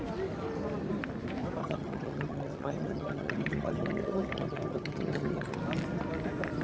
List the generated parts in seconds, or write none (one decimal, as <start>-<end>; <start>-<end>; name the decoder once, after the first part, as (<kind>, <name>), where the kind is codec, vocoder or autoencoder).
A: 1.6-5.6 (vocoder, HiFi-GAN)